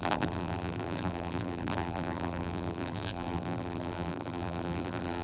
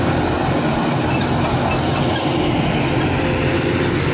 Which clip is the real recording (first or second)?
second